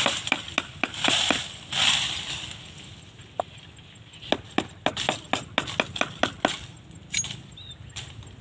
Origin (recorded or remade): recorded